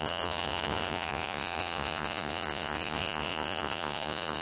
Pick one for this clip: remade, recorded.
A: remade